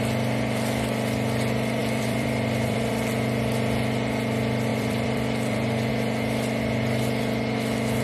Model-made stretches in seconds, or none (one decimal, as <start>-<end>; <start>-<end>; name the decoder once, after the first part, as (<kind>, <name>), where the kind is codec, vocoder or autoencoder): 1.8-2.9 (vocoder, BigVGAN v2); 4.7-5.9